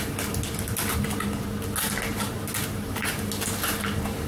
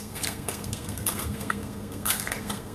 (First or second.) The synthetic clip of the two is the second